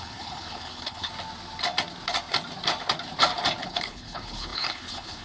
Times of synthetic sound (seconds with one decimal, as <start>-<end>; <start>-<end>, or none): 0.0-1.1; 3.6-5.2